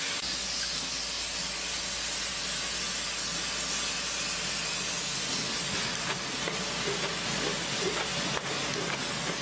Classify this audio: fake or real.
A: real